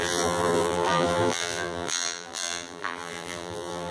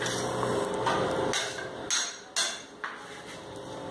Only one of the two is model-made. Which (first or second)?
first